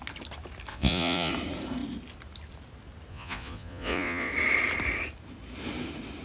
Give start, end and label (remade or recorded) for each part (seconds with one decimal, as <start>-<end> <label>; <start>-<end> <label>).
0.0-0.7 recorded; 0.7-1.3 remade; 1.3-3.1 recorded; 3.1-4.3 remade; 4.3-6.2 recorded